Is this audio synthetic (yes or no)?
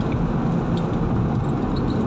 no